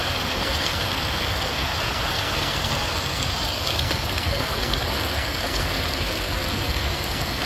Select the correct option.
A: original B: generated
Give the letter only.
B